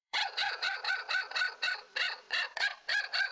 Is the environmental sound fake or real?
fake